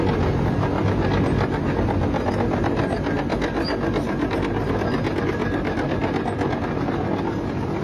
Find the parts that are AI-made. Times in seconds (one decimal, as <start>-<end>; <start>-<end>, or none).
none